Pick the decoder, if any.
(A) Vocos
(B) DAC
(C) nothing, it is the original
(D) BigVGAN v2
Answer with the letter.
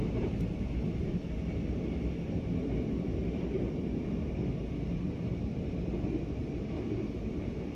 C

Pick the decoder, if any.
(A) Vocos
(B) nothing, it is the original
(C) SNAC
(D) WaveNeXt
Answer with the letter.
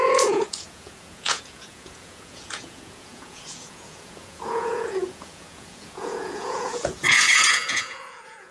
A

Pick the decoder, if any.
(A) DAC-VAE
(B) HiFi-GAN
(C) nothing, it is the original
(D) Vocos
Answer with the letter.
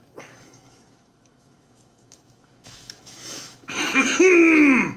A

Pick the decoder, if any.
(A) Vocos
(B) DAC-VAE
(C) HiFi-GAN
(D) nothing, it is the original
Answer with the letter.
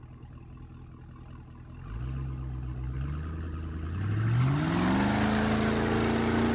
D